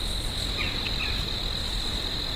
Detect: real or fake real